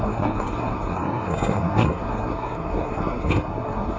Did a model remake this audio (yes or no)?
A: yes